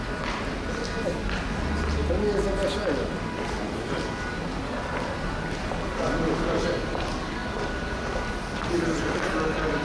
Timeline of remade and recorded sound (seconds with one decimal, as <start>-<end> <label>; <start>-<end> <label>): 0.0-9.8 recorded

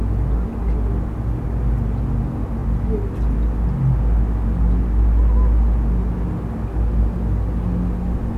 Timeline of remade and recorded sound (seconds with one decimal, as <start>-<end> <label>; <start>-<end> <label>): 0.0-8.4 recorded

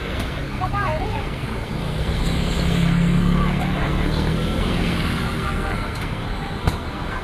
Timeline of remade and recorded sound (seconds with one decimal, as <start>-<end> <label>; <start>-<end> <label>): 0.0-7.2 remade

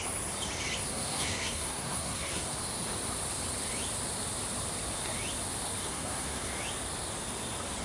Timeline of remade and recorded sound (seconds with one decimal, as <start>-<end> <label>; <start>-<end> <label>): 0.0-0.9 recorded; 0.9-2.6 remade; 2.6-5.8 recorded; 5.8-6.5 remade; 6.5-7.8 recorded

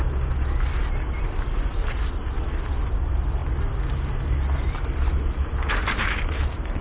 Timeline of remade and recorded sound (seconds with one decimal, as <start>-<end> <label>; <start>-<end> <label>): 0.0-6.8 recorded